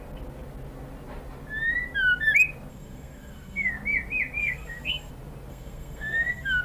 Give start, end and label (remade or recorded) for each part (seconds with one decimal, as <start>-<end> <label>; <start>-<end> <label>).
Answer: 0.0-2.7 recorded; 2.7-3.7 remade; 3.7-4.4 recorded; 4.4-5.1 remade; 5.1-5.5 recorded; 5.5-6.6 remade

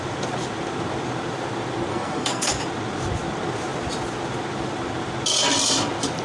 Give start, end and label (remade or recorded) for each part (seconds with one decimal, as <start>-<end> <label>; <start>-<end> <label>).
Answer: 0.0-1.9 recorded; 1.9-2.5 remade; 2.5-6.2 recorded

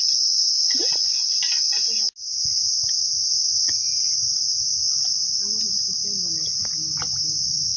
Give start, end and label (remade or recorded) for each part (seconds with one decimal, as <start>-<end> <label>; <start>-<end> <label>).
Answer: 0.0-7.8 recorded

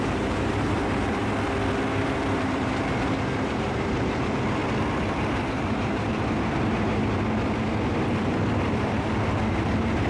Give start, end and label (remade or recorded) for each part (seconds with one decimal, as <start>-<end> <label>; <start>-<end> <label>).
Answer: 0.0-1.2 remade; 1.2-2.0 recorded; 2.0-4.6 remade; 4.6-5.5 recorded; 5.5-7.0 remade; 7.0-9.5 recorded; 9.5-10.1 remade

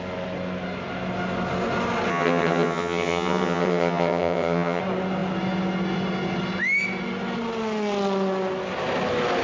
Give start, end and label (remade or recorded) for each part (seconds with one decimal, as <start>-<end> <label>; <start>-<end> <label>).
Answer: 0.0-2.1 recorded; 2.1-4.8 remade; 4.8-9.4 recorded